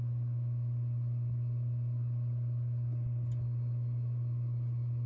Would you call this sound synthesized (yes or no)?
no